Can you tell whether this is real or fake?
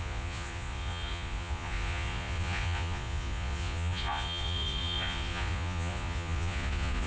fake